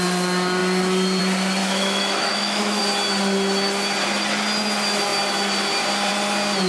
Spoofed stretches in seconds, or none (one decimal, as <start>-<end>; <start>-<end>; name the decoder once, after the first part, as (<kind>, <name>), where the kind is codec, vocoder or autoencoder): 1.6-2.8 (autoencoder, DAC-VAE)

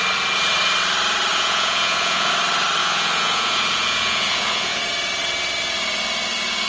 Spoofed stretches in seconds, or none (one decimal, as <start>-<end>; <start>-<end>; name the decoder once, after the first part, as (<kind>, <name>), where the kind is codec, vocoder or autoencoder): 1.3-2.3 (vocoder, Vocos); 2.8-4.8

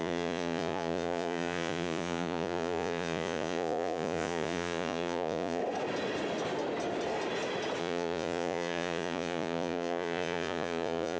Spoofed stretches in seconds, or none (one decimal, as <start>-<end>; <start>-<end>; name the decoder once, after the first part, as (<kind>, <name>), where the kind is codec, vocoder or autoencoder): 0.0-5.6 (vocoder, Vocos); 7.8-11.2

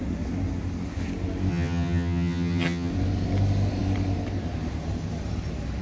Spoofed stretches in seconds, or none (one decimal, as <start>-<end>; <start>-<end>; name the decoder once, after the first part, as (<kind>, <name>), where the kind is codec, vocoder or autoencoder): 1.5-2.9 (vocoder, HiFi-GAN)

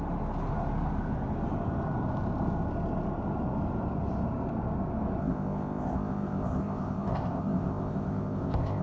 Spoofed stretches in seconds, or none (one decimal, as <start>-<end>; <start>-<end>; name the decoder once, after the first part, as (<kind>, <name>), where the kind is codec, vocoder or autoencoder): 5.2-8.8 (codec, ZipCodec)

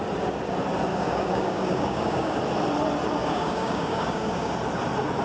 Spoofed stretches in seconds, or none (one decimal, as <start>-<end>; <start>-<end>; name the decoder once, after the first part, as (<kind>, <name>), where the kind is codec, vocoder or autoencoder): 0.9-2.4 (codec, DAC); 3.2-4.5

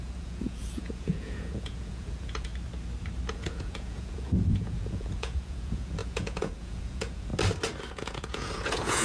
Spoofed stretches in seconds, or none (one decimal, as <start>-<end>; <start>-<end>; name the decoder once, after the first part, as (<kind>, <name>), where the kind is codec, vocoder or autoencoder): 0.0-2.5 (vocoder, Vocos); 3.3-7.3; 7.9-9.0

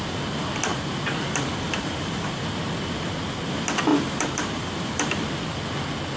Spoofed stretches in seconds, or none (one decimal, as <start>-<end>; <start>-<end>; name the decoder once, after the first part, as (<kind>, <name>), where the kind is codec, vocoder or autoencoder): 0.7-2.5 (vocoder, BigVGAN v2); 3.9-5.2